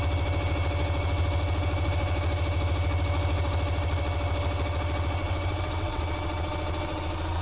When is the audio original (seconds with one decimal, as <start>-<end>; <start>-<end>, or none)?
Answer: 0.0-5.2; 6.0-7.4